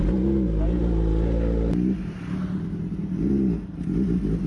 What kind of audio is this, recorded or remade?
recorded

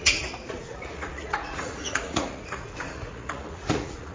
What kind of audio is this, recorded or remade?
remade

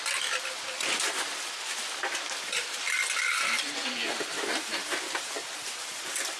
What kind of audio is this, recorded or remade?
remade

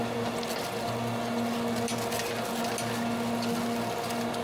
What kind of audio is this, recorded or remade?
recorded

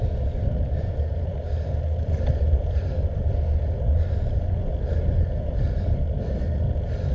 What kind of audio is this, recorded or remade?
recorded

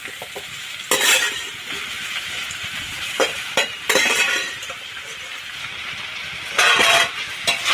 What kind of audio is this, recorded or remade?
remade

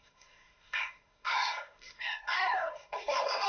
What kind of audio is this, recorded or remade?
remade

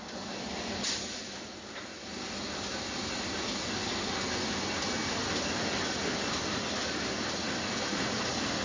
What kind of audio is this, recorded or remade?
recorded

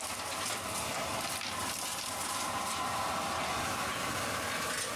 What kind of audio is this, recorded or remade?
recorded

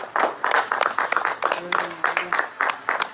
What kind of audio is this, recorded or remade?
recorded